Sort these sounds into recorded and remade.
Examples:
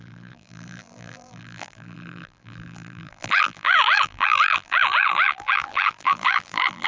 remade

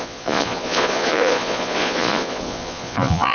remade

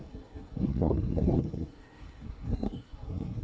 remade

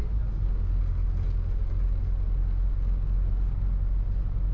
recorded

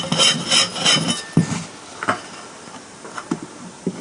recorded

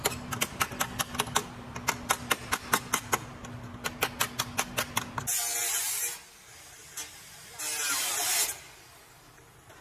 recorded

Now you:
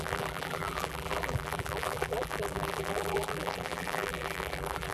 remade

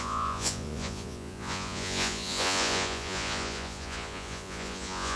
remade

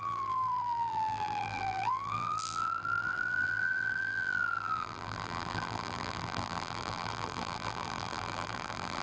remade